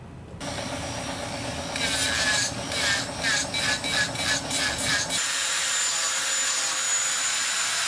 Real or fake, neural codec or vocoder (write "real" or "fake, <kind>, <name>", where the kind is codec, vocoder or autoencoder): real